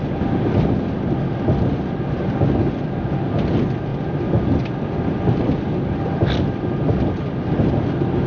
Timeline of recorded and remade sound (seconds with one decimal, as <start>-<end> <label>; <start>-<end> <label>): 0.0-3.9 recorded; 3.9-6.4 remade; 6.4-8.3 recorded